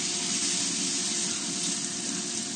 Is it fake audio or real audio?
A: real